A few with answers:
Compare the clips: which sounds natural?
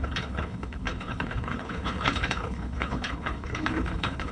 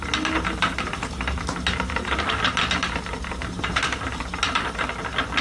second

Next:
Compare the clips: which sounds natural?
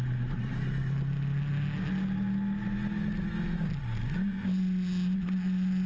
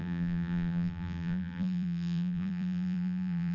first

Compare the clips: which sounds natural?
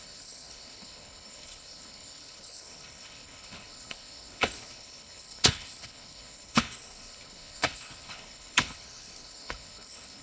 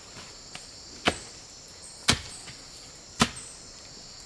second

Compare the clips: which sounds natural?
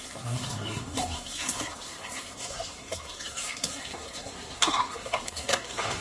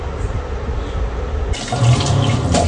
second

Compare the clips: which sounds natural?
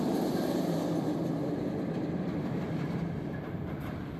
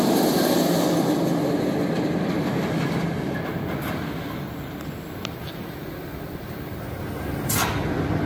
second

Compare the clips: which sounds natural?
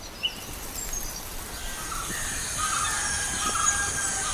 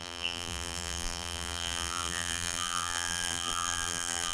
first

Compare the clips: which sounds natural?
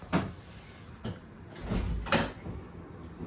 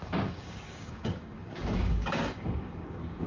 first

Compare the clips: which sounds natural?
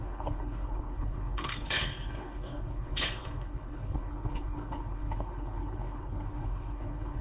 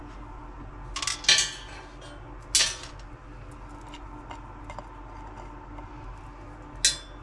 second